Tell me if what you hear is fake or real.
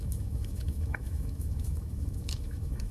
fake